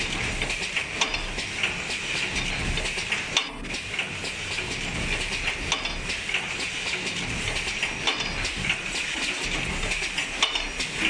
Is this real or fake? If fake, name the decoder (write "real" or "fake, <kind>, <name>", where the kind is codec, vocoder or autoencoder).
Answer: real